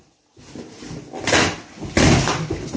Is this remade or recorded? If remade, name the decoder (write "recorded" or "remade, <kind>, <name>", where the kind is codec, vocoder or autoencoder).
recorded